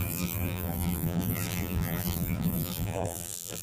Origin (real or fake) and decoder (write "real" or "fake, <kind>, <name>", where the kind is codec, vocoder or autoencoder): fake, vocoder, BigVGAN v2